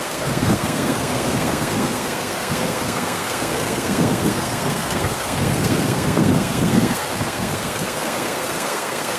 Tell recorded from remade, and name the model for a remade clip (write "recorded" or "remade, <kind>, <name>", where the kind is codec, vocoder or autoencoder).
remade, codec, SNAC